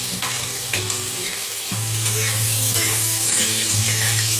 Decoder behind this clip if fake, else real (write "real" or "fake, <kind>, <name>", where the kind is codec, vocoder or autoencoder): fake, codec, DAC